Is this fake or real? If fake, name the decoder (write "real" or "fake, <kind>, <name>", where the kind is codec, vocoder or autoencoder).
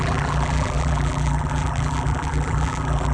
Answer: fake, vocoder, BigVGAN v2